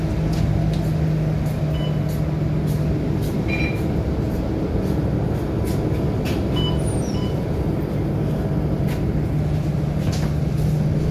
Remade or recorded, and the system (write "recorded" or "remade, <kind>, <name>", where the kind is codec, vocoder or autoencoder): recorded